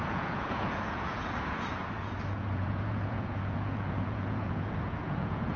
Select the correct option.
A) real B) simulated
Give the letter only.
B